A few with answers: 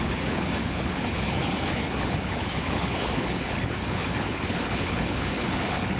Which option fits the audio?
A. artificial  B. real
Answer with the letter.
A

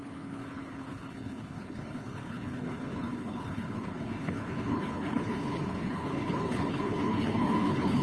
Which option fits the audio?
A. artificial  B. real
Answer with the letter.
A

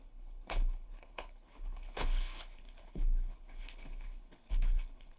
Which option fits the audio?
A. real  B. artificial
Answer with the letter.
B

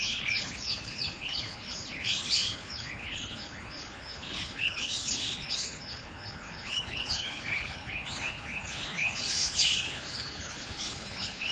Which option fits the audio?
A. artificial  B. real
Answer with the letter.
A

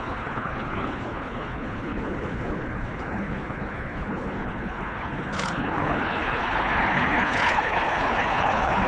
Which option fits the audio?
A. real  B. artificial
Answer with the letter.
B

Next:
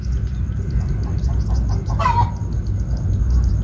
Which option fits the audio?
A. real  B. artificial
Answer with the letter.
A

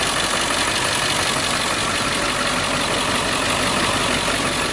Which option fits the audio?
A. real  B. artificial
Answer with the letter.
A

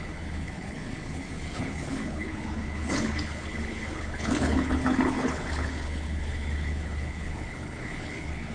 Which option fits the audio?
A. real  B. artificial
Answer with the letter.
B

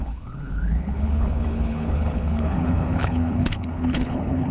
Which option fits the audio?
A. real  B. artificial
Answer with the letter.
B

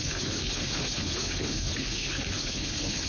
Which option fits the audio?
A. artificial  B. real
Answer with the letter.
A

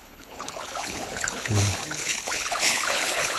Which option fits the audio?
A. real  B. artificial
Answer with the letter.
B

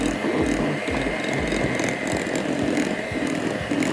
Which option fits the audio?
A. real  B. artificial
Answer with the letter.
A